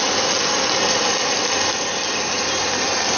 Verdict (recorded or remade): recorded